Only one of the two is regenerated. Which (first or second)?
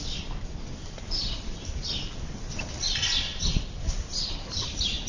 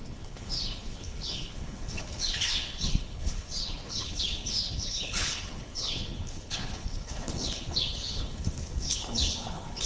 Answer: second